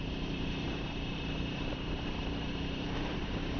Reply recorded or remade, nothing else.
remade